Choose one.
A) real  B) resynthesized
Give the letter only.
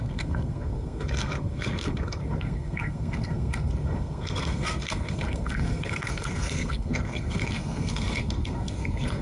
B